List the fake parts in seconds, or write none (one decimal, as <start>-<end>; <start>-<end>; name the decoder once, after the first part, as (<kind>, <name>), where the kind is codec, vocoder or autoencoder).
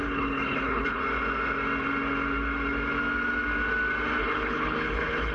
0.0-1.0 (codec, HILCodec); 4.2-5.3